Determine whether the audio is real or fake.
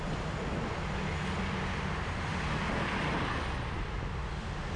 real